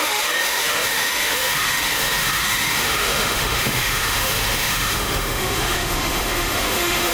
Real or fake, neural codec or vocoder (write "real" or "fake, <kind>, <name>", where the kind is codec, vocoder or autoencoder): fake, autoencoder, DAC-VAE